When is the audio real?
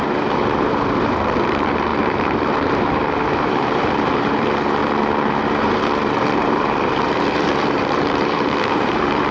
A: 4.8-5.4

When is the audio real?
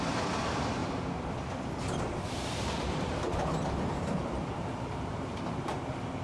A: 0.8-2.0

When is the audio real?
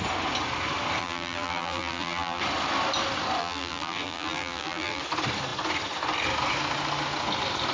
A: 0.0-1.0; 2.4-3.4; 5.0-7.7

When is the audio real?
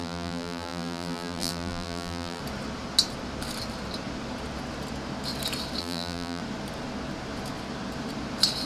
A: 2.4-5.8; 6.4-8.7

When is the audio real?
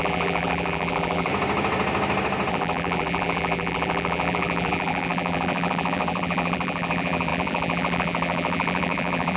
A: 1.3-2.5